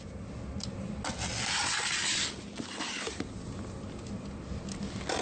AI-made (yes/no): no